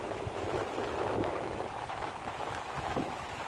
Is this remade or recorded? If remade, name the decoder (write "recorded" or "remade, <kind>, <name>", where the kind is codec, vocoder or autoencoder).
remade, autoencoder, DAC-VAE